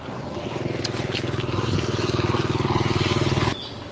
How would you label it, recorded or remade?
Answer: recorded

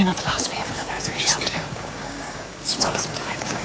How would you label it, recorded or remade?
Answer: remade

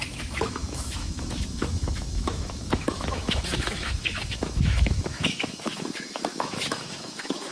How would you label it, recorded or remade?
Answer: remade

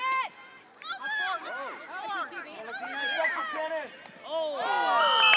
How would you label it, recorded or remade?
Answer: recorded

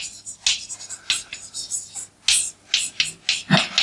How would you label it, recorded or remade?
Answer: recorded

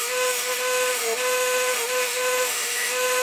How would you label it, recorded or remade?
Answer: remade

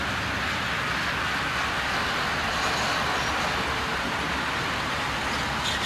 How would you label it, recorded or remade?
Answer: recorded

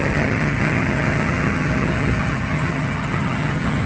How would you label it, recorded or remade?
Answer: remade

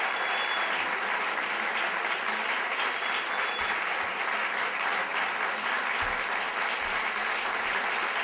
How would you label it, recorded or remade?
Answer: recorded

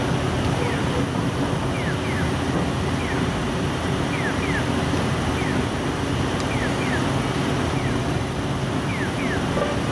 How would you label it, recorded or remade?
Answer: recorded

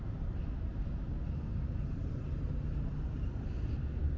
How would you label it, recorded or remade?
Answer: recorded